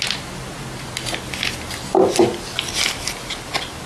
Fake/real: real